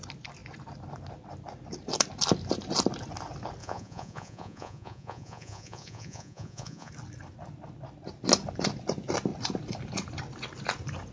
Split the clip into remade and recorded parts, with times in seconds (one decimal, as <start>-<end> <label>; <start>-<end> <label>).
0.0-3.6 recorded; 3.6-6.9 remade; 6.9-11.1 recorded